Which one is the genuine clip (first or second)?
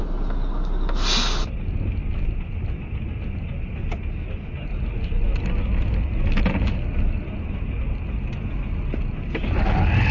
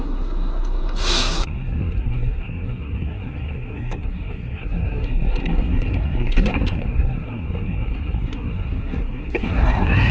first